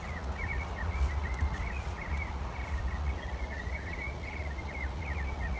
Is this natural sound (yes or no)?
no